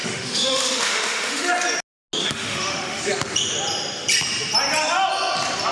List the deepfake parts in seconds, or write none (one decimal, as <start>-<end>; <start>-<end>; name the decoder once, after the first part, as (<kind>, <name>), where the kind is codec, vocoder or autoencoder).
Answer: 0.0-1.5 (autoencoder, DAC-VAE); 2.2-3.0